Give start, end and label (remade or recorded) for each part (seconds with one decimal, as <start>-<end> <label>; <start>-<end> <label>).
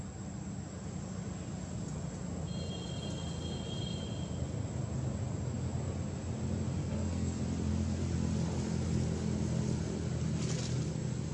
0.0-6.8 recorded; 6.8-7.4 remade; 7.4-11.3 recorded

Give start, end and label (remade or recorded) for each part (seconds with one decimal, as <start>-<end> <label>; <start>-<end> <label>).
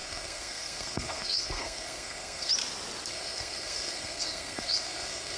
0.0-2.5 remade; 2.5-3.1 recorded; 3.1-5.4 remade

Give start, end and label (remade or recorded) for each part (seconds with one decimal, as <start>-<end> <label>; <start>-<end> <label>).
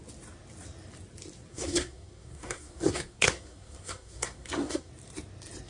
0.0-1.5 recorded; 1.5-4.9 remade; 4.9-5.7 recorded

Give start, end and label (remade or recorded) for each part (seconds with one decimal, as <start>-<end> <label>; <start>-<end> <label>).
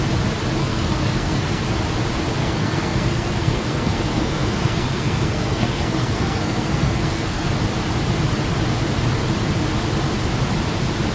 0.0-0.6 recorded; 0.6-1.6 remade; 1.6-2.4 recorded; 2.4-7.5 remade; 7.5-11.1 recorded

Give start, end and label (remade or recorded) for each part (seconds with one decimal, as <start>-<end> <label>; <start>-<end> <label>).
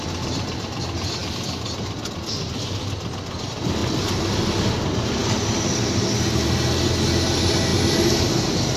0.0-8.8 recorded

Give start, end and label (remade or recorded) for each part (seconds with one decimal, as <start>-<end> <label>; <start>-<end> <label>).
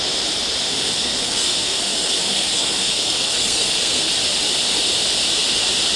0.0-0.7 recorded; 0.7-4.1 remade; 4.1-6.0 recorded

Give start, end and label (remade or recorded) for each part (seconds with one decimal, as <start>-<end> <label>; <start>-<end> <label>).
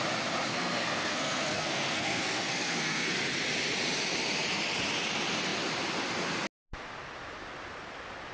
0.0-0.5 recorded; 0.5-3.1 remade; 3.1-8.3 recorded